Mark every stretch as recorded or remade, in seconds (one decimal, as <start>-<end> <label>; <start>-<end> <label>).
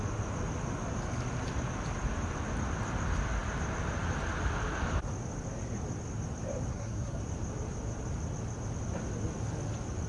0.0-6.7 recorded; 6.7-7.2 remade; 7.2-10.1 recorded